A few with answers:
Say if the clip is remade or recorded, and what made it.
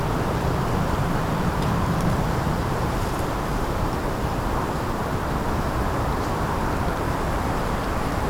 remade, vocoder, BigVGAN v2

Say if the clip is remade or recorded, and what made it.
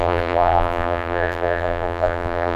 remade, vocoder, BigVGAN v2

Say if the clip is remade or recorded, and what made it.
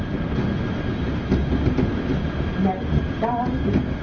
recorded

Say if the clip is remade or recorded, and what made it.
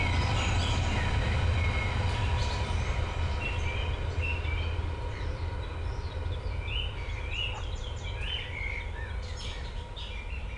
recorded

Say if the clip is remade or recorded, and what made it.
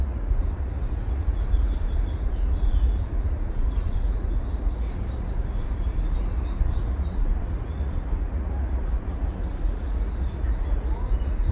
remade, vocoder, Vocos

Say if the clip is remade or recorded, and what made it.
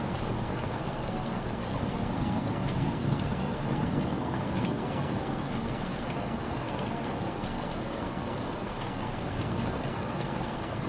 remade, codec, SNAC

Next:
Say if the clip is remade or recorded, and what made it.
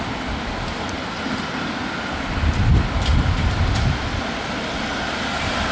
recorded